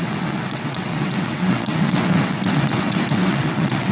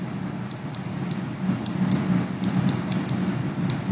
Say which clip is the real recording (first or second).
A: second